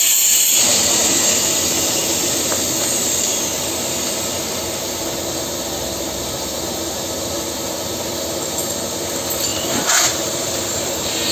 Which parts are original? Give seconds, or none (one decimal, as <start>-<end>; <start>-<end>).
0.0-9.5; 10.9-11.3